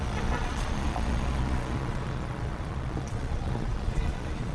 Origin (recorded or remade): remade